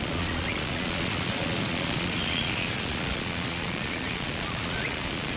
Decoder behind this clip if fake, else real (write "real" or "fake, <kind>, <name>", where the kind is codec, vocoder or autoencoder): fake, vocoder, Vocos